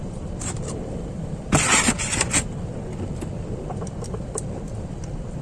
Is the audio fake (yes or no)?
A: yes